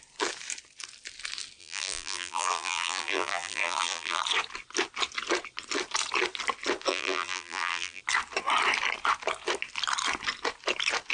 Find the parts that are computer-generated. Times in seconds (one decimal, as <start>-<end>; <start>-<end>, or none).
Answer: 1.6-4.2; 6.9-8.0